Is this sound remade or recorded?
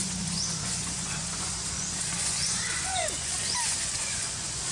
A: remade